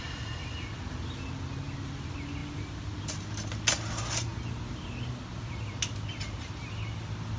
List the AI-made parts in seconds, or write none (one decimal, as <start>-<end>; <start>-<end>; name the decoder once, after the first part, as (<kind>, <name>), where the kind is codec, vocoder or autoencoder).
none